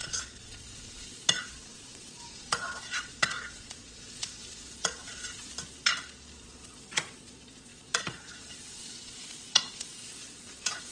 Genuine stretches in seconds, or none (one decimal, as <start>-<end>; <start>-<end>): 5.5-6.4